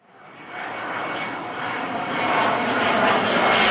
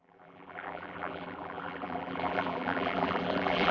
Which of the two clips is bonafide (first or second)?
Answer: first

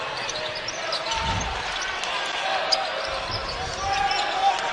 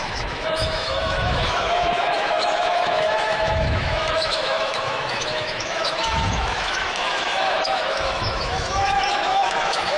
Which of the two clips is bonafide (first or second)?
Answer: first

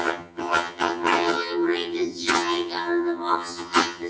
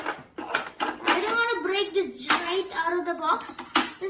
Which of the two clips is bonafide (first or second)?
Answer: second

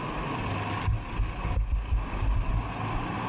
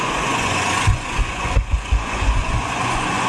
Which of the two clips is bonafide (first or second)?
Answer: first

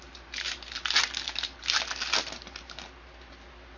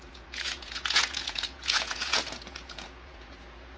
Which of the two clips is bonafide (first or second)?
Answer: first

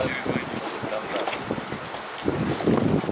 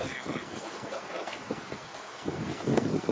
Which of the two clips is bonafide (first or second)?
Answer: first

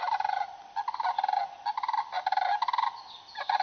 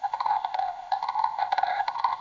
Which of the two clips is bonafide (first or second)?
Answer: first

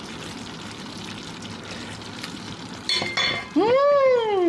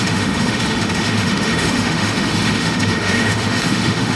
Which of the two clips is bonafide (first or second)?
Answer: first